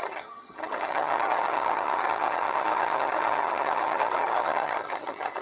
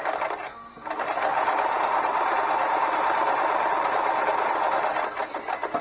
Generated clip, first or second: first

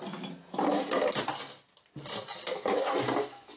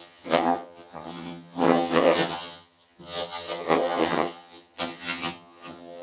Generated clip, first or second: second